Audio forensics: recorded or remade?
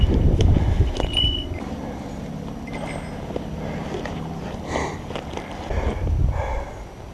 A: recorded